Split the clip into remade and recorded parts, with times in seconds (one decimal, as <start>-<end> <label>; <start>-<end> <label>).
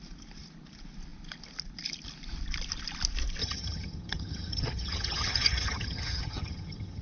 0.0-3.4 recorded; 3.4-7.0 remade